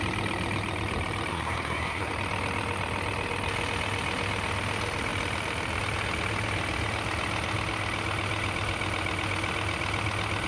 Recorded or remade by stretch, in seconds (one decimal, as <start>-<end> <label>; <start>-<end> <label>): 0.0-1.3 recorded; 1.3-2.1 remade; 2.1-10.5 recorded

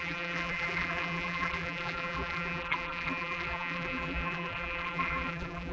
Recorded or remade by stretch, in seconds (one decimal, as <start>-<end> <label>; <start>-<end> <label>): 0.0-5.7 remade

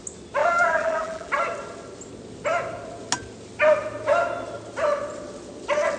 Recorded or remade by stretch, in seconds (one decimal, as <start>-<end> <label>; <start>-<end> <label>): 0.0-0.4 recorded; 0.4-1.3 remade; 1.3-6.0 recorded